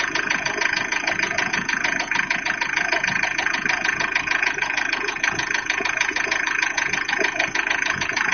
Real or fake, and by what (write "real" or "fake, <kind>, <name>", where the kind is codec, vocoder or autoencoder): fake, vocoder, Vocos